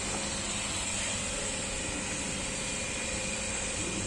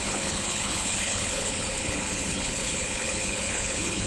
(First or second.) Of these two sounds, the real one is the first